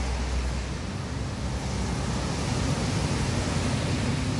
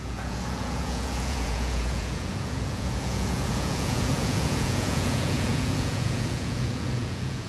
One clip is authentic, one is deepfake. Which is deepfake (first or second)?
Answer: second